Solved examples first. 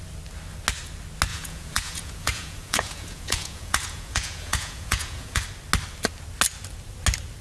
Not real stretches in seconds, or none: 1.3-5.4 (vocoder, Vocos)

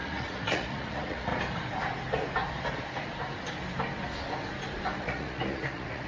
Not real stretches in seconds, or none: 0.0-1.3 (vocoder, Vocos); 5.0-6.1

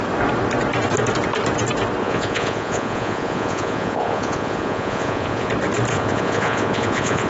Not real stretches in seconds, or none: 2.0-5.5 (vocoder, Vocos); 5.9-7.3

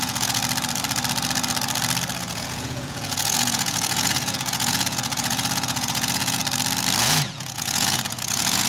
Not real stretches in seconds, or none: 0.0-0.4 (vocoder, Vocos); 2.2-6.4; 7.0-8.7

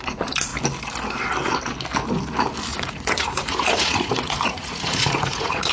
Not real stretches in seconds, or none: 2.7-5.7 (vocoder, Vocos)